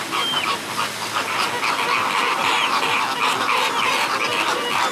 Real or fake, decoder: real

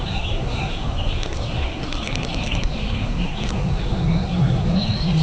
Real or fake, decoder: fake, codec, SNAC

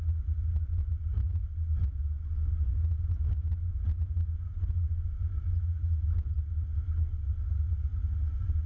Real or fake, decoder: real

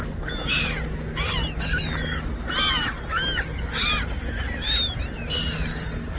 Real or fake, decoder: real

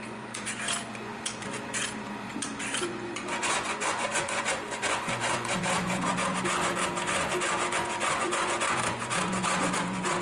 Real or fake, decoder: fake, vocoder, Vocos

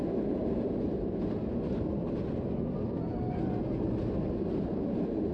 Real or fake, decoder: real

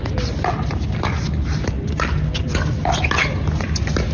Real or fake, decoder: real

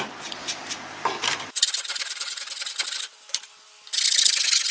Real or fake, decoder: real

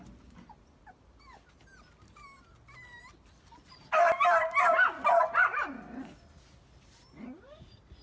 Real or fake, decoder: real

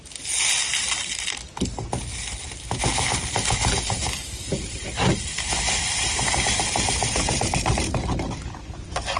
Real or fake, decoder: real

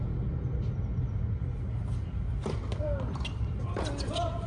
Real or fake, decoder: real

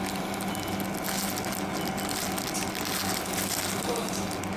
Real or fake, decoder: real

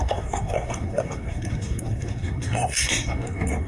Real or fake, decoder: fake, codec, SNAC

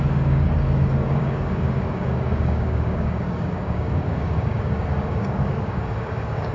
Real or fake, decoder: fake, codec, DAC